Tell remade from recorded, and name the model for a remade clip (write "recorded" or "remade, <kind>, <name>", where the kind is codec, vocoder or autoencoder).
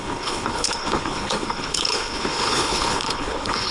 remade, codec, HILCodec